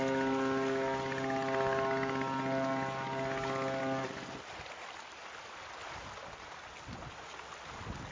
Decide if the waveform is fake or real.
real